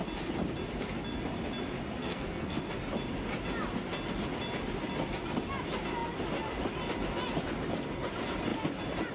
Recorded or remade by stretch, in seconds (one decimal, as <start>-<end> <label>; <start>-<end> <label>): 0.0-2.0 recorded; 2.0-2.6 remade; 2.6-9.1 recorded